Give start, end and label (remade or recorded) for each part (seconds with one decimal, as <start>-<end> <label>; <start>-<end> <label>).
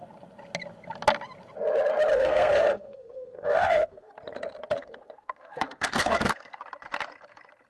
0.0-2.1 recorded; 2.1-4.1 remade; 4.1-4.8 recorded; 4.8-6.6 remade; 6.6-7.7 recorded